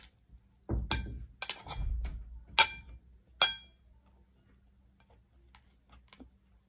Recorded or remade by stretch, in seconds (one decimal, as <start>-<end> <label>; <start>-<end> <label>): 0.0-6.7 recorded